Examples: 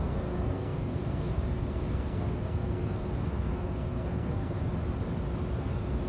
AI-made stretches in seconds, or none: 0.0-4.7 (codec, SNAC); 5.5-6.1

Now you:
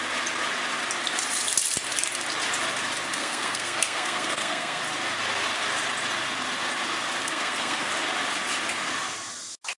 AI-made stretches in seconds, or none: 3.1-4.8 (codec, SNAC); 7.2-7.9

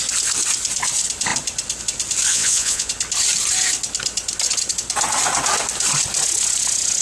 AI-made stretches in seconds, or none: 2.3-2.9 (vocoder, Vocos)

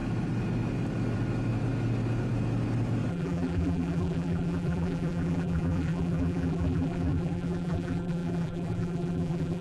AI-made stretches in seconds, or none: 3.1-9.6 (vocoder, BigVGAN v2)

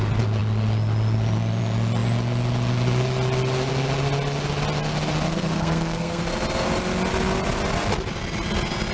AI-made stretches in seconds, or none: 5.3-6.2 (codec, SNAC)

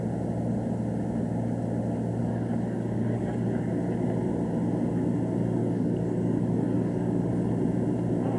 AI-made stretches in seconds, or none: 2.2-3.7 (codec, DAC); 5.6-7.5